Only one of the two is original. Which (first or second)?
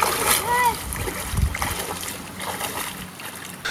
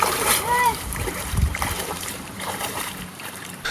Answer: first